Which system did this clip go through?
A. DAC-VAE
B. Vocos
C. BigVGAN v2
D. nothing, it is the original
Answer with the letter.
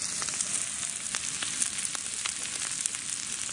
D